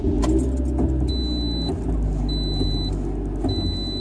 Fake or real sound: real